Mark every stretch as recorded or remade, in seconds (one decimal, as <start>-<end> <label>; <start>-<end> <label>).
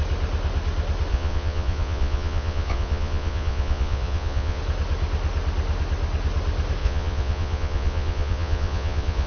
0.0-1.1 recorded; 1.1-4.6 remade; 4.6-6.8 recorded; 6.8-9.3 remade